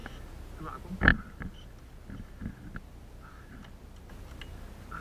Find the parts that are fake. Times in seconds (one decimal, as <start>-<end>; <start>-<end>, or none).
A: none